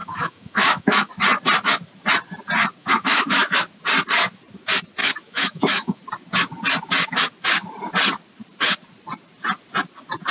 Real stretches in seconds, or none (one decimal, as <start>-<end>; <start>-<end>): 1.1-2.8; 3.6-5.0; 6.0-10.3